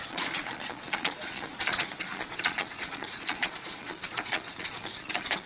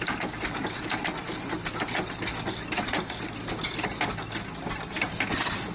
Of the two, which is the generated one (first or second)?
first